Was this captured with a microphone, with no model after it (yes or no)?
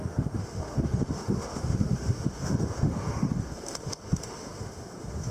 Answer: no